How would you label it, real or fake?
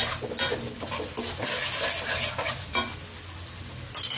real